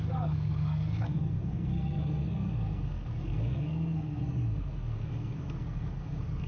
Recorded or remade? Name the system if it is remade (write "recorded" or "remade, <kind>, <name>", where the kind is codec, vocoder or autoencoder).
remade, codec, SNAC